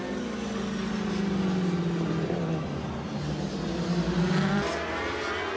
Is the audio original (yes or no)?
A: yes